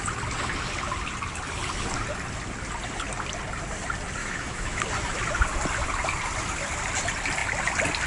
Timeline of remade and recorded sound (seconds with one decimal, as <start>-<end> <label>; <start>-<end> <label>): 0.0-4.2 recorded; 4.2-4.8 remade; 4.8-8.1 recorded